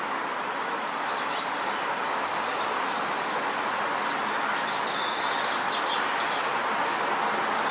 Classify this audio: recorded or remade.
recorded